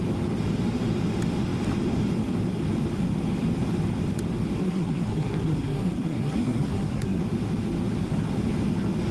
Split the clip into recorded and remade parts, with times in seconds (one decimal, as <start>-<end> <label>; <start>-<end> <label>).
0.0-4.6 recorded; 4.6-7.2 remade; 7.2-9.1 recorded